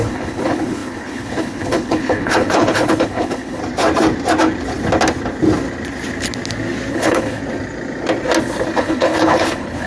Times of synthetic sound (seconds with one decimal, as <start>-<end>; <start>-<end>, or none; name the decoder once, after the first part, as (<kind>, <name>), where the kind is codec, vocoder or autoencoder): 0.0-3.6 (codec, HILCodec); 6.9-7.4; 8.8-9.9